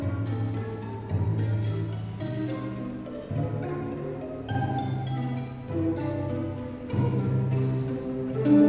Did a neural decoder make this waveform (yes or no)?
no